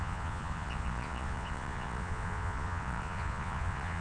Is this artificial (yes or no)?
yes